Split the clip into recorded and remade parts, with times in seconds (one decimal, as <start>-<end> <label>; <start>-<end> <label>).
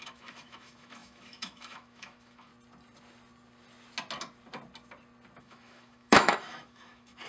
0.0-2.5 remade; 2.5-5.4 recorded; 5.4-7.3 remade